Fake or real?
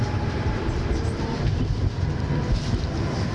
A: fake